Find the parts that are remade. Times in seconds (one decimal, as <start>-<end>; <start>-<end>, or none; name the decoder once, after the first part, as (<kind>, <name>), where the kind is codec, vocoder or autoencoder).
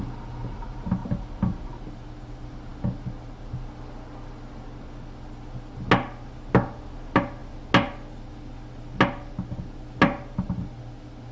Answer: 1.0-1.7 (vocoder, BigVGAN v2)